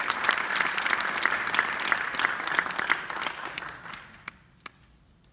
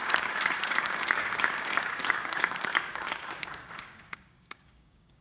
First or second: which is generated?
second